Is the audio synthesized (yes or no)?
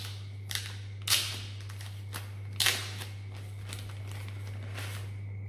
no